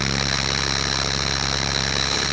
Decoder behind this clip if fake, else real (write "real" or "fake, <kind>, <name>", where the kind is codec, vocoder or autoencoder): real